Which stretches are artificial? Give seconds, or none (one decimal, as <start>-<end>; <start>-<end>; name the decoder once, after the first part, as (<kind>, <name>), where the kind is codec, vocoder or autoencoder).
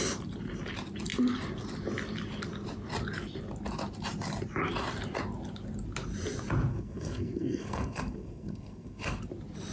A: 6.7-9.2 (codec, SNAC)